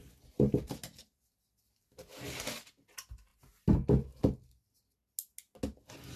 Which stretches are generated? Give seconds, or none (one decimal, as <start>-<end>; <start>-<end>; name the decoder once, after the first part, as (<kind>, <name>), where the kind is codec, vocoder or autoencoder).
none